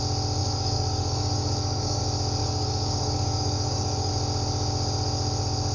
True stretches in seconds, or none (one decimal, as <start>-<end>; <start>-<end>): 0.0-0.4; 2.0-2.4; 4.1-5.7